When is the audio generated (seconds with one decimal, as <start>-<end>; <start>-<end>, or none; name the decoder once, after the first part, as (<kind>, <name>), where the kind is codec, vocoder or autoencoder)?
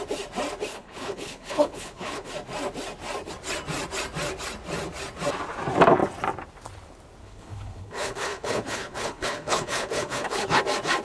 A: 0.7-2.3 (codec, HILCodec); 7.2-10.6